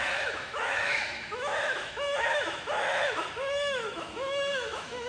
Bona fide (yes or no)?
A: no